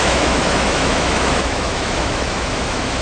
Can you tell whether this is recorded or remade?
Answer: remade